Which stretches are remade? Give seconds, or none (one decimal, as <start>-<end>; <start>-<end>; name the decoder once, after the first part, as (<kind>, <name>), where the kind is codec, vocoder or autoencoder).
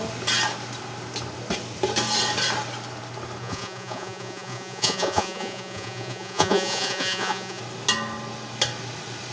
3.4-7.6 (vocoder, Vocos)